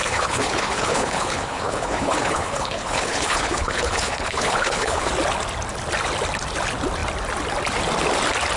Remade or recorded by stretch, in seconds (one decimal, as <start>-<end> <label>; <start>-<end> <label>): 0.0-5.1 remade; 5.1-8.6 recorded